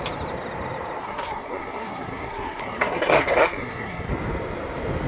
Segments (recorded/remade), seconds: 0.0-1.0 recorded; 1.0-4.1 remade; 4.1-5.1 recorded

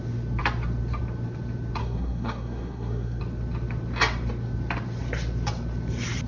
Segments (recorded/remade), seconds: 0.0-1.8 recorded; 1.8-3.2 remade; 3.2-6.3 recorded

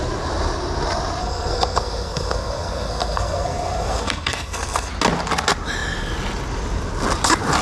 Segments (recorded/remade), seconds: 0.0-1.2 recorded; 1.2-4.9 remade; 4.9-7.6 recorded

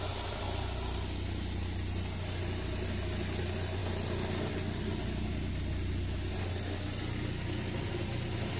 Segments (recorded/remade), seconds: 0.0-8.6 recorded

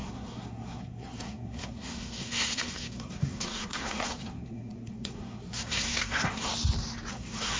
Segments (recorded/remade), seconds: 0.0-6.5 remade; 6.5-7.1 recorded; 7.1-7.6 remade